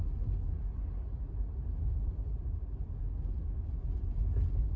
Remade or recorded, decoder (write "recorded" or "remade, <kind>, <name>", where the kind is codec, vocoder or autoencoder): recorded